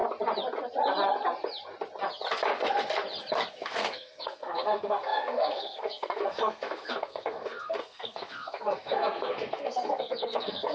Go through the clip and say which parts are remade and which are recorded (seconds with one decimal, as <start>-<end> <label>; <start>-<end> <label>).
0.0-3.5 recorded; 3.5-10.7 remade